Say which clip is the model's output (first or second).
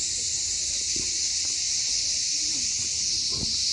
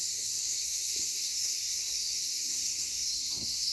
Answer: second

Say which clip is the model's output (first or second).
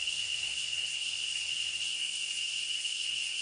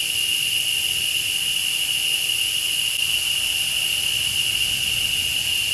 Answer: first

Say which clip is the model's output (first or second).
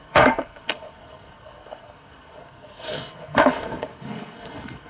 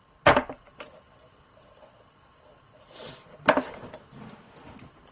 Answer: first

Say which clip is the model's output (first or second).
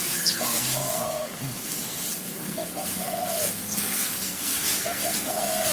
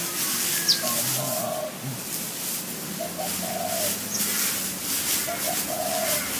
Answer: first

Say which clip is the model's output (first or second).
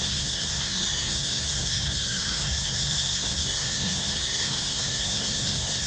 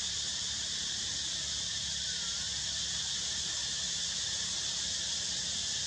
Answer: first